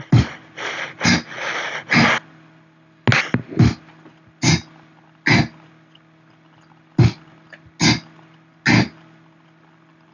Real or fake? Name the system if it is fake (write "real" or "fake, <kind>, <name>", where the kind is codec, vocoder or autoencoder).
real